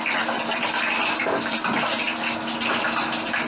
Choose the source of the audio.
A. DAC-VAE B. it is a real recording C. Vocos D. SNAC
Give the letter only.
B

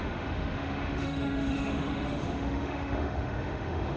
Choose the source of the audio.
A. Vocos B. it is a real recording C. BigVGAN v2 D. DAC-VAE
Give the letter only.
D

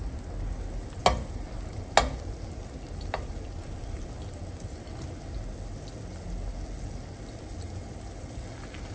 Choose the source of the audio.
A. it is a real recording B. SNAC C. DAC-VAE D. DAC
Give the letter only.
A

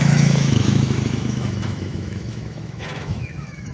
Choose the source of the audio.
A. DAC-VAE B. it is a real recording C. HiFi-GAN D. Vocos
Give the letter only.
A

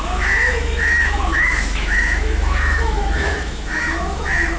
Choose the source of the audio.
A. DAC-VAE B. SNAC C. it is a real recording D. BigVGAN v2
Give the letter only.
A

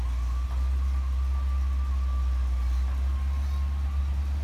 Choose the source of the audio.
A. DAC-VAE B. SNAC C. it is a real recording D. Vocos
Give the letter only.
C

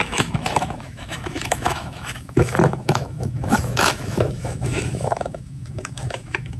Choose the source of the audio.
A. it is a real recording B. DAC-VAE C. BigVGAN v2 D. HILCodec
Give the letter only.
B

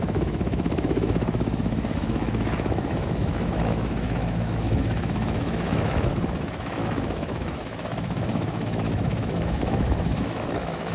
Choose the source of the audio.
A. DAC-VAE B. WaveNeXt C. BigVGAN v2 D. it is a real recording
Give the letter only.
A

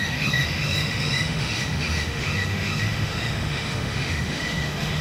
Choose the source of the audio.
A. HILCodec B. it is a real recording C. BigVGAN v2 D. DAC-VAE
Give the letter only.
D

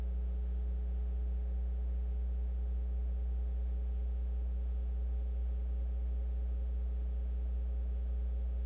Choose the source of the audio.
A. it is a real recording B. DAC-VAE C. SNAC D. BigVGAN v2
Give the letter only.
B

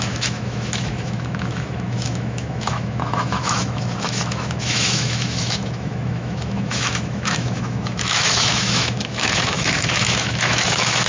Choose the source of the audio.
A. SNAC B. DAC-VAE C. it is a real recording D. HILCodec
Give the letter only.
B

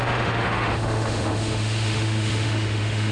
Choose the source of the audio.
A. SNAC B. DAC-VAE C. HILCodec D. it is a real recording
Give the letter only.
B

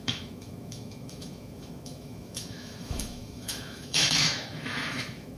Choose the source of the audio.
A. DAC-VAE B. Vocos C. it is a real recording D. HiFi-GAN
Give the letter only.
A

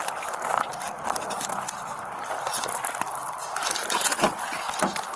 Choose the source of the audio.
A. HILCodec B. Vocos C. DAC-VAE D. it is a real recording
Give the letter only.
D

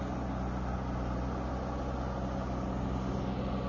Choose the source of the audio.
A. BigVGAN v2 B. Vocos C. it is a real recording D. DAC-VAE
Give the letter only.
C